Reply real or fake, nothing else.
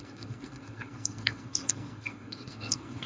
fake